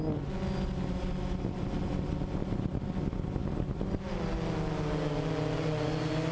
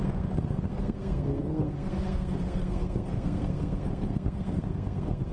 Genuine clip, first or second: first